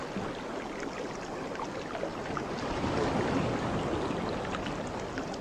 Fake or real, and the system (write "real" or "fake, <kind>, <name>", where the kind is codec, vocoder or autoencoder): real